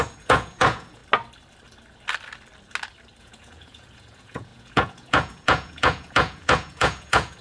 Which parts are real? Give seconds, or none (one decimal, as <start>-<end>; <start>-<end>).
1.0-3.2